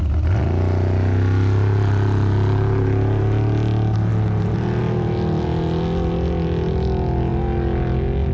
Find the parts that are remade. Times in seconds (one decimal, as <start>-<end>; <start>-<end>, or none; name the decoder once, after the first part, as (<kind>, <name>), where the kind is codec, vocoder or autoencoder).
none